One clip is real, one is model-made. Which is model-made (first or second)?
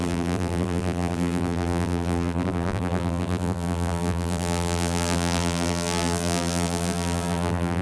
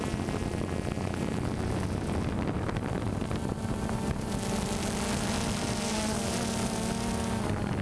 first